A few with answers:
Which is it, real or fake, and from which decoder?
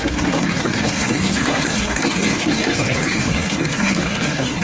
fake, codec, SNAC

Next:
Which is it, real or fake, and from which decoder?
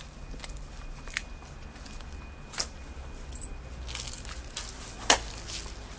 real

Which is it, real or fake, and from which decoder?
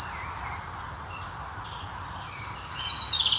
real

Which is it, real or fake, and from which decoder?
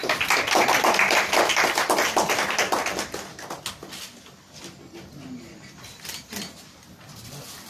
real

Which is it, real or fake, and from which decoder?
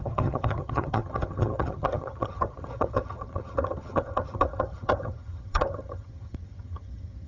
fake, vocoder, HiFi-GAN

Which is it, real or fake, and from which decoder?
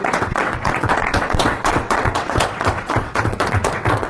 fake, vocoder, WaveNeXt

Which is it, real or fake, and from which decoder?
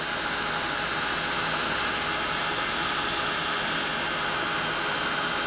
real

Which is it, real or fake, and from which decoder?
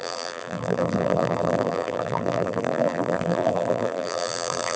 fake, vocoder, BigVGAN v2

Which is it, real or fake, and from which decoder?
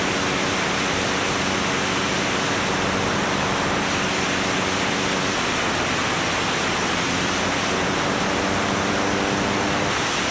real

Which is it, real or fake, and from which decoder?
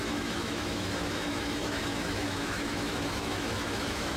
fake, autoencoder, DAC-VAE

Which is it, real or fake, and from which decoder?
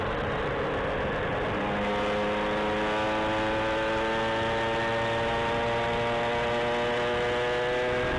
real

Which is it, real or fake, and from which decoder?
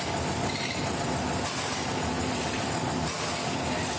real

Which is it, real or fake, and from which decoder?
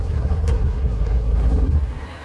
fake, codec, SNAC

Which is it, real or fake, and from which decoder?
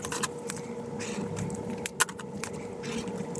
real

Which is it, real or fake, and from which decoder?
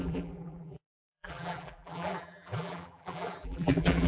fake, vocoder, BigVGAN v2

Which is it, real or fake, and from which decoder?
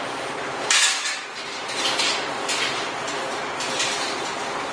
real